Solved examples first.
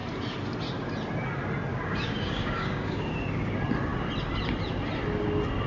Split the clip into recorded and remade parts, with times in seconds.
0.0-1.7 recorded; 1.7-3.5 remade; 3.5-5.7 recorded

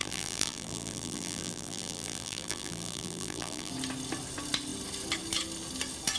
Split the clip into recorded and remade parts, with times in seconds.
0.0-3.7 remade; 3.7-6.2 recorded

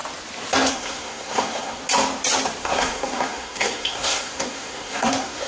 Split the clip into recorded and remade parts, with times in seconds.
0.0-0.7 recorded; 0.7-1.8 remade; 1.8-2.6 recorded; 2.6-5.5 remade

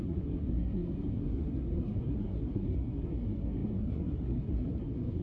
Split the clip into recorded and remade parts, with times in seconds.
0.0-5.2 remade

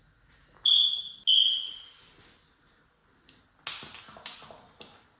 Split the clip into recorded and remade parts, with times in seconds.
0.0-5.2 recorded

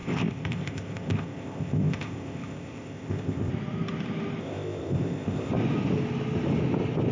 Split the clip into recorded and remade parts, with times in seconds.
0.0-3.5 remade; 3.5-4.4 recorded; 4.4-5.5 remade; 5.5-7.1 recorded

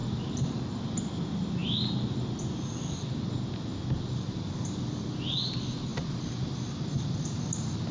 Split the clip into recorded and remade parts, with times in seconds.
0.0-7.9 recorded